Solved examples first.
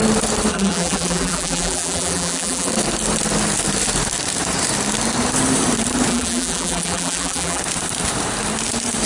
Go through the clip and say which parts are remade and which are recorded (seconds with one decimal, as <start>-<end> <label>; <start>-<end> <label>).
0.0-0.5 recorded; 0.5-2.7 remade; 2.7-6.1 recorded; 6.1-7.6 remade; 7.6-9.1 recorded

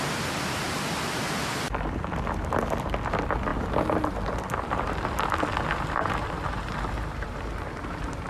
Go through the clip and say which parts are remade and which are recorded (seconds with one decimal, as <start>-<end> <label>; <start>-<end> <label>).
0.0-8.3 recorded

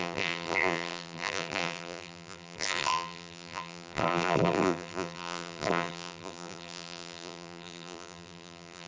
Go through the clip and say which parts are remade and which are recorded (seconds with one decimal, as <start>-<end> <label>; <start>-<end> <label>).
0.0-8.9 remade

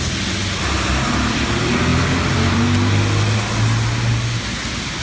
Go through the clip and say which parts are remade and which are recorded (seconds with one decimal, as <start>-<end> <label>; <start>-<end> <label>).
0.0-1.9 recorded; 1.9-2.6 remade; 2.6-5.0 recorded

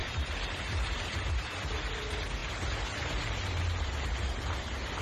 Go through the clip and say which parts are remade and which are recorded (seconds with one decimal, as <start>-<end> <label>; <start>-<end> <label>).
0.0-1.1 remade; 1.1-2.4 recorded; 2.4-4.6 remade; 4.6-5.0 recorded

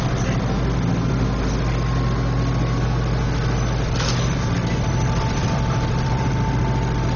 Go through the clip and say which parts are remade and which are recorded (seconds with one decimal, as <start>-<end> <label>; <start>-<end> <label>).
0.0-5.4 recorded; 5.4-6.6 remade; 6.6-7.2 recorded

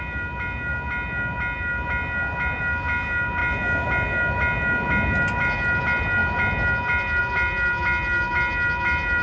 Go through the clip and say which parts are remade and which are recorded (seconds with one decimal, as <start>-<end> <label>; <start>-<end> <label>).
0.0-9.2 recorded

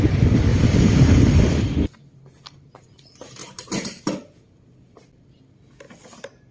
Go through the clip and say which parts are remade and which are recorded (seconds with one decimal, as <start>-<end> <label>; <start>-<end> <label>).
0.0-0.5 recorded; 0.5-1.4 remade; 1.4-3.4 recorded; 3.4-4.0 remade; 4.0-6.5 recorded